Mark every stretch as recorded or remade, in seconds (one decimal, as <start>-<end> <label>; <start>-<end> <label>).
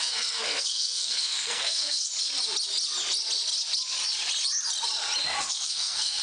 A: 0.0-2.1 remade; 2.1-5.4 recorded; 5.4-6.2 remade